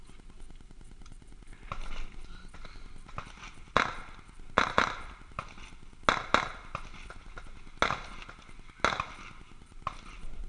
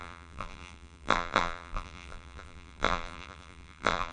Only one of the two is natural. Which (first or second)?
first